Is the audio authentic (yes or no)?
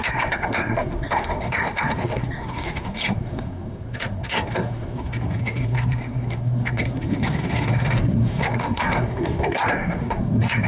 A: no